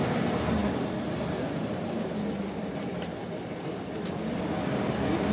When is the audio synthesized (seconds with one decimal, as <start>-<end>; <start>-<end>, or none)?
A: none